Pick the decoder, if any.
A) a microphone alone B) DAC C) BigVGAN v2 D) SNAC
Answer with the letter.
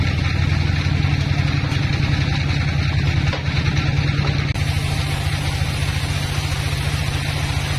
A